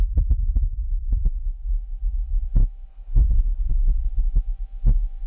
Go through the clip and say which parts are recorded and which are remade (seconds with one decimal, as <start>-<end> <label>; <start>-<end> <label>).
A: 0.0-2.9 recorded; 2.9-3.7 remade; 3.7-5.3 recorded